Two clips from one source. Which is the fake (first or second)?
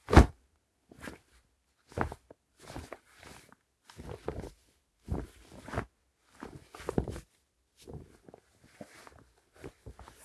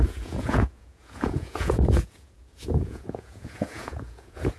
second